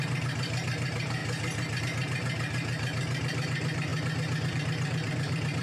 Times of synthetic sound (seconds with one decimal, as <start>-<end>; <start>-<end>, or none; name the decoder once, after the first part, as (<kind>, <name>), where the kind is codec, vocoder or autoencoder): 0.0-1.2 (vocoder, BigVGAN v2); 1.8-3.9; 4.5-5.6